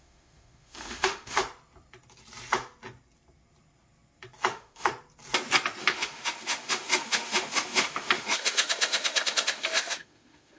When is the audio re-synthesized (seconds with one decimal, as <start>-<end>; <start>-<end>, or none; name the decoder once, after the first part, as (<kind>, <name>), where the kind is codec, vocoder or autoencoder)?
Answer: 0.0-1.4 (autoencoder, DAC-VAE); 4.5-4.9; 5.8-10.6